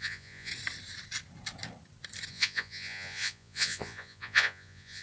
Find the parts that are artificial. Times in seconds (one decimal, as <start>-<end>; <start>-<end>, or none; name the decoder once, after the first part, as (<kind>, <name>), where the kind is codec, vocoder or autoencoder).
0.0-0.5 (vocoder, Vocos); 2.3-5.0